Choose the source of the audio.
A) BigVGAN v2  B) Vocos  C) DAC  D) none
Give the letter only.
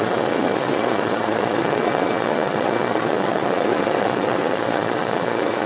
B